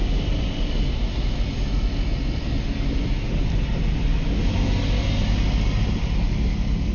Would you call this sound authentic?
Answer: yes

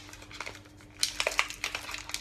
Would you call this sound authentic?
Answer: yes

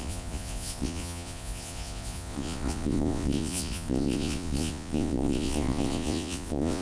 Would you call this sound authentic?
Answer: no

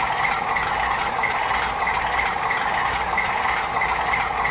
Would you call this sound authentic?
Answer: yes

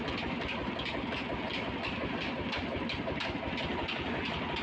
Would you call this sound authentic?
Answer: yes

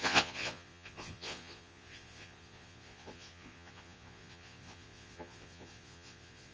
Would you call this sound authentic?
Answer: no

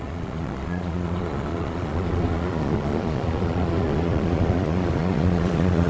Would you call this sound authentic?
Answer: no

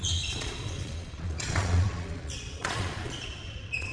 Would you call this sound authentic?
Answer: no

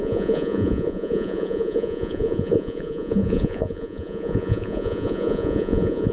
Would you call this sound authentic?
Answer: no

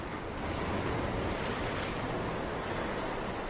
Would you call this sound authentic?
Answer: yes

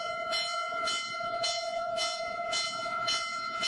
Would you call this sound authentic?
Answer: no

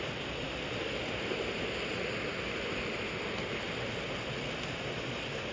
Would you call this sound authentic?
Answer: yes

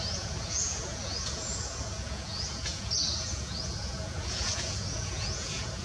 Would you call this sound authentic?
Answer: no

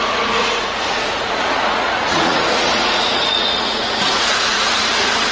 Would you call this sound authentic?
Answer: no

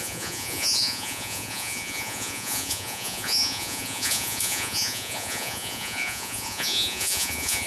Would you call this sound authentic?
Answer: no